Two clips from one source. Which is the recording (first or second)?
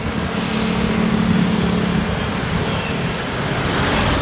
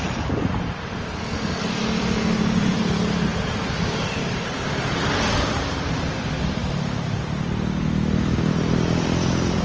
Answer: first